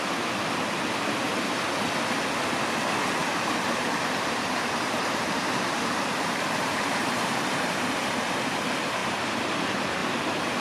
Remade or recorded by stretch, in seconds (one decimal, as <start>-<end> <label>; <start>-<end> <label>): 0.0-3.2 recorded; 3.2-7.9 remade; 7.9-9.0 recorded; 9.0-9.6 remade; 9.6-10.6 recorded